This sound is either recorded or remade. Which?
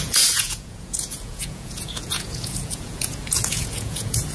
remade